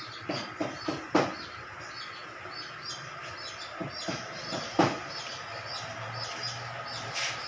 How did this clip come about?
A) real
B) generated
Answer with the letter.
A